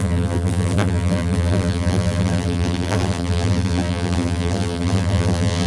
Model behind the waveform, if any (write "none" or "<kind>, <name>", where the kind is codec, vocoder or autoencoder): vocoder, BigVGAN v2